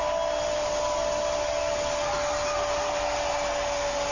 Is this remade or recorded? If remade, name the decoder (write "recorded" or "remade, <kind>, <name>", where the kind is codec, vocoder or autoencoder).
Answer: recorded